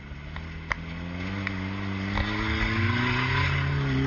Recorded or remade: recorded